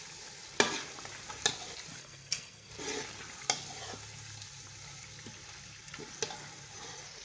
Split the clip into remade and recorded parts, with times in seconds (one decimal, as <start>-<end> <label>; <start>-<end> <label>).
0.0-2.0 recorded; 2.0-2.7 remade; 2.7-7.2 recorded